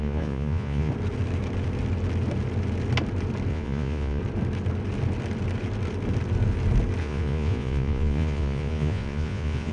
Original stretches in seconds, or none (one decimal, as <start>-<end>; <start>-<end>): 0.9-3.5; 4.2-7.0